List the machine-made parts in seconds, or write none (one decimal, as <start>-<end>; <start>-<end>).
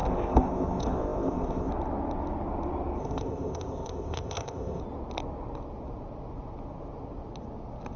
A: 0.0-1.7; 3.0-4.8